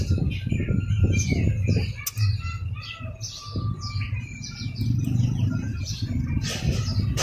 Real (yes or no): yes